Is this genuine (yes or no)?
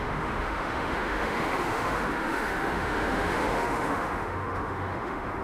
no